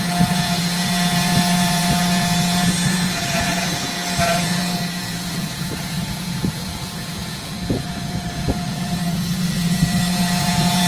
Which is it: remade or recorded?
remade